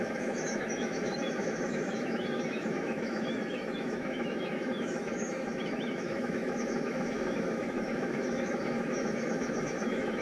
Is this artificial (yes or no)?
yes